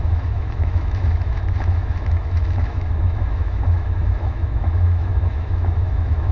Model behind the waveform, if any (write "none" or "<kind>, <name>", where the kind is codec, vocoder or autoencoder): autoencoder, DAC-VAE